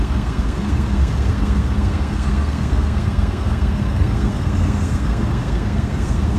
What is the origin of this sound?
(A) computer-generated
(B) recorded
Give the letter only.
A